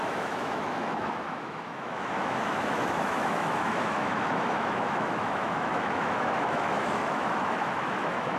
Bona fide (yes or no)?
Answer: no